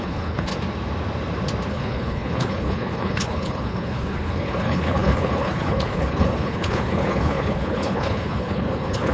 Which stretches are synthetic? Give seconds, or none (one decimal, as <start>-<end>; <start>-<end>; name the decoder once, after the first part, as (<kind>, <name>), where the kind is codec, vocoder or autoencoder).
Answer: 0.0-0.5 (codec, HILCodec); 1.7-9.1